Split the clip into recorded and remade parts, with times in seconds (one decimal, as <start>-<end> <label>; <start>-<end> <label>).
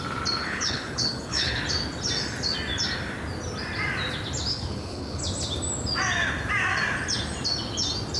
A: 0.0-0.4 recorded; 0.4-1.6 remade; 1.6-4.5 recorded; 4.5-5.2 remade; 5.2-8.2 recorded